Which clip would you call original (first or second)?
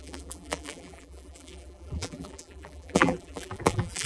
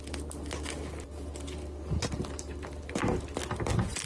second